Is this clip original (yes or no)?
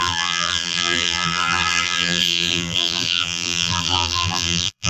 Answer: no